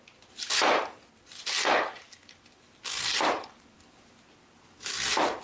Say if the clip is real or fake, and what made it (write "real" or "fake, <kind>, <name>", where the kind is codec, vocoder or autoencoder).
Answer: real